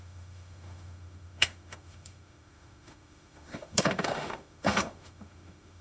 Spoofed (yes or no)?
yes